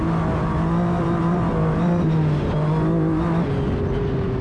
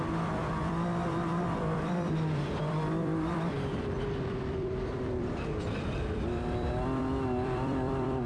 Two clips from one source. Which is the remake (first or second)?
second